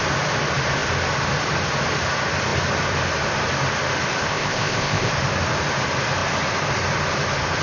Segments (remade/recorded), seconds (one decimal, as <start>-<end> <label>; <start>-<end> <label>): 0.0-4.3 recorded; 4.3-5.1 remade; 5.1-7.6 recorded

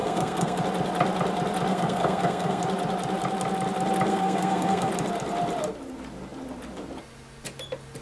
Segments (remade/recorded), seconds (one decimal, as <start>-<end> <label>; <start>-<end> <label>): 0.0-0.6 remade; 0.6-1.7 recorded; 1.7-2.6 remade; 2.6-4.1 recorded; 4.1-4.9 remade; 4.9-8.0 recorded

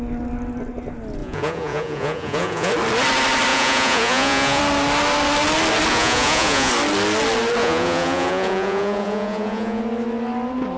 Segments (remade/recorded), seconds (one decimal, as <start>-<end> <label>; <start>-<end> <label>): 0.0-1.2 recorded; 1.2-2.7 remade; 2.7-3.5 recorded; 3.5-4.6 remade; 4.6-5.9 recorded; 5.9-6.7 remade; 6.7-7.6 recorded; 7.6-9.8 remade; 9.8-10.8 recorded

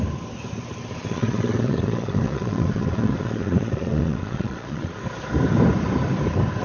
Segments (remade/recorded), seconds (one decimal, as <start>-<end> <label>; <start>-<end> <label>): 0.0-1.0 recorded; 1.0-5.0 remade; 5.0-6.6 recorded

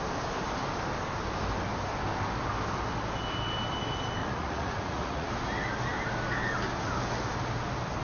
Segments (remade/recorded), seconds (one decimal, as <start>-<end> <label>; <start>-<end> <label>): 0.0-4.2 recorded; 4.2-5.3 remade; 5.3-8.0 recorded

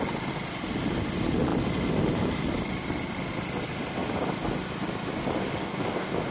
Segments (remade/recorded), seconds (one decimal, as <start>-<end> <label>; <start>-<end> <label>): 0.0-5.6 recorded; 5.6-6.3 remade